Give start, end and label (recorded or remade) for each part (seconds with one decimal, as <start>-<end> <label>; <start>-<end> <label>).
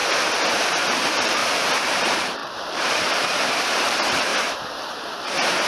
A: 0.0-0.8 recorded; 0.8-1.4 remade; 1.4-1.9 recorded; 1.9-5.7 remade